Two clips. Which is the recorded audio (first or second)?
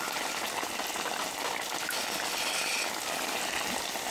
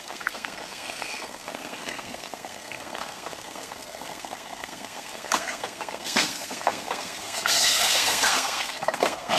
first